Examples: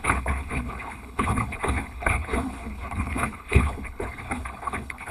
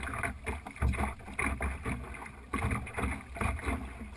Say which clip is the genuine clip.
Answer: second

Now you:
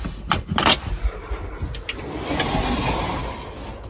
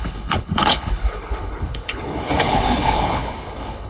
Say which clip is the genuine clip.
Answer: first